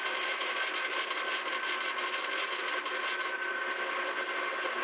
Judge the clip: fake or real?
real